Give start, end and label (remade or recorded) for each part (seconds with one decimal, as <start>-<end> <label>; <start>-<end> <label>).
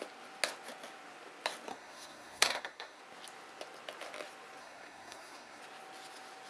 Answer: 0.0-1.7 recorded; 1.7-3.0 remade; 3.0-4.6 recorded; 4.6-5.6 remade; 5.6-6.5 recorded